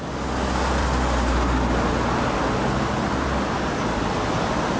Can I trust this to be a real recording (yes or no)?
yes